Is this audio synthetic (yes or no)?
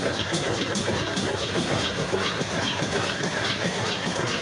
yes